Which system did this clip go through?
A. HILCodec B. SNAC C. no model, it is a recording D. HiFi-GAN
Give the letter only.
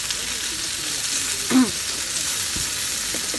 C